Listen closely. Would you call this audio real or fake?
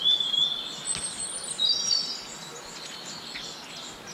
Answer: real